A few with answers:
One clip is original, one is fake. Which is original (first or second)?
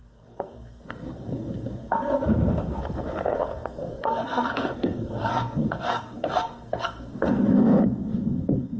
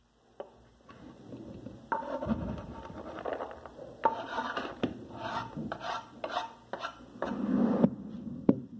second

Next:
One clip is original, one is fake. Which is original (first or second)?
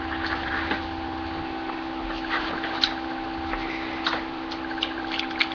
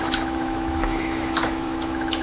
first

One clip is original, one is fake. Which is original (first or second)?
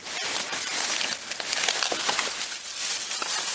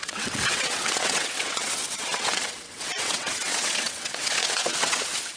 first